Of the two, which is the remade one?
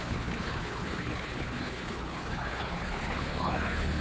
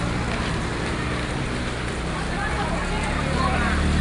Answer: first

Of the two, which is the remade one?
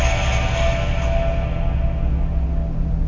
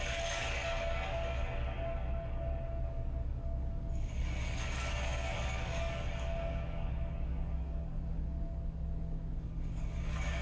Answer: second